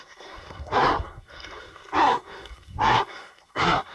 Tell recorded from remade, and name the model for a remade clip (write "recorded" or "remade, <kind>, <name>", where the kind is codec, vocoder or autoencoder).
remade, codec, SNAC